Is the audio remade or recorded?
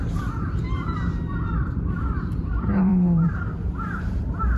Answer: remade